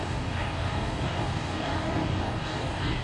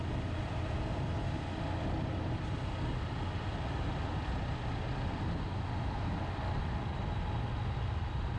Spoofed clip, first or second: first